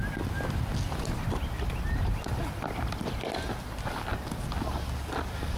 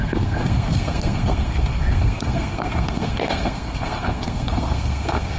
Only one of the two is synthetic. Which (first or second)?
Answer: second